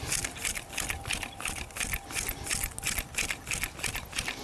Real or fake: real